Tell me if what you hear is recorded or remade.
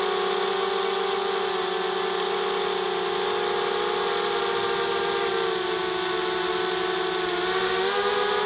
recorded